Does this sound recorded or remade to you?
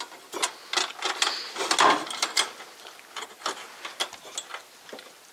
recorded